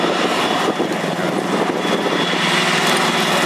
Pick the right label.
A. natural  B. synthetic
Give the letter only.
A